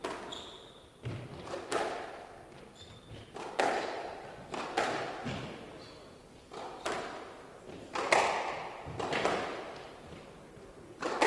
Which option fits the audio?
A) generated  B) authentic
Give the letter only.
B